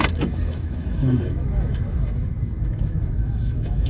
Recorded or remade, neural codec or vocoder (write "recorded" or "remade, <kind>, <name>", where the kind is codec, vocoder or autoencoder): remade, autoencoder, DAC-VAE